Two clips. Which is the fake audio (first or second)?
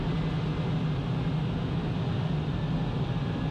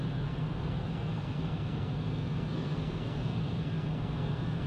second